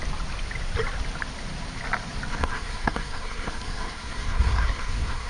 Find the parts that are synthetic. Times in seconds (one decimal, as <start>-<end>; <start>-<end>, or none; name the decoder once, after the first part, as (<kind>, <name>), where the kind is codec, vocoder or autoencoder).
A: 2.3-5.3 (codec, SNAC)